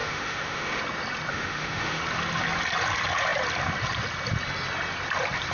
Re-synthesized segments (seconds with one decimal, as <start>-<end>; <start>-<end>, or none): 0.0-0.8; 1.3-2.0